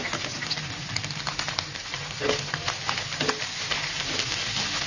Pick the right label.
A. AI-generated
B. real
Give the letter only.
B